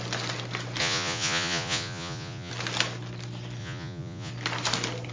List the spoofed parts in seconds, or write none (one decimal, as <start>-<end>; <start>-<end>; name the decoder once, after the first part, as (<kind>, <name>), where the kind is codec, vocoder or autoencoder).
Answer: 0.8-2.5 (vocoder, Vocos); 3.6-4.3